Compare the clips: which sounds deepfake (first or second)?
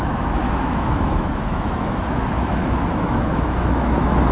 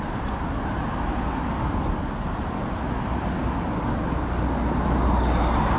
first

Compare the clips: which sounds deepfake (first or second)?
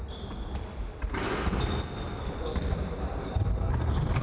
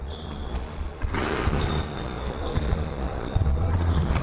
second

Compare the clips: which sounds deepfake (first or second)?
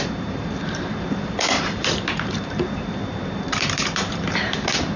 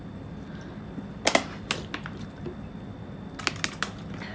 first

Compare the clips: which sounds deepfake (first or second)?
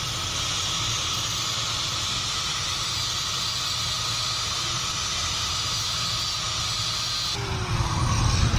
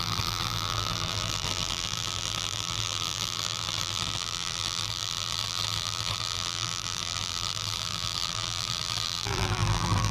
second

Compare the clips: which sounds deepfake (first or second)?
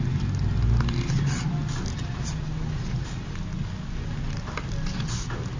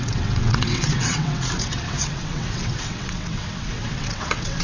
second